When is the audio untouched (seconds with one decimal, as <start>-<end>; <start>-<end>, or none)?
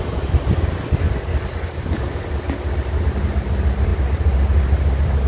0.0-5.3